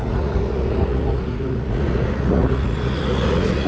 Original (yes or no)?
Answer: no